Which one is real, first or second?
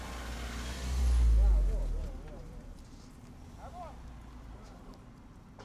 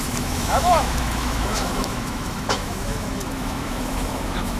first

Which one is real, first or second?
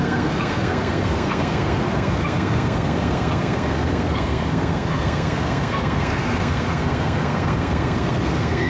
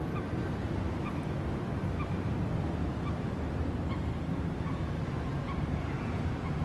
second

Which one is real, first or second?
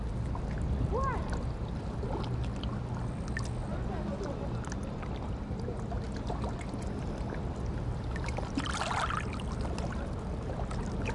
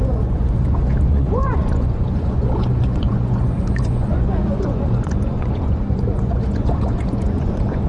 first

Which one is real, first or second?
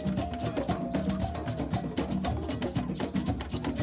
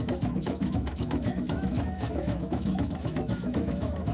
first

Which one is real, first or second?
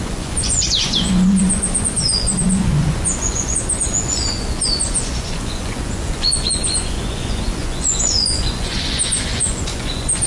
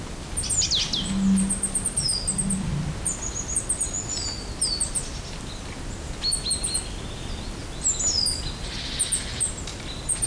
second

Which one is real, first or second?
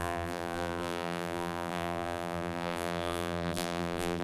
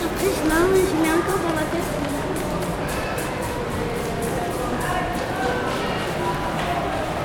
second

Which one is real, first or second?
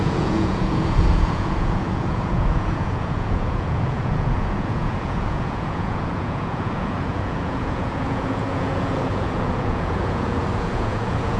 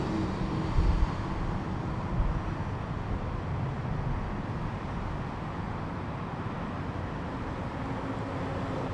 second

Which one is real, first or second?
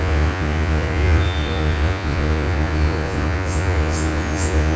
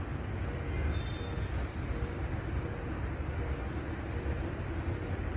second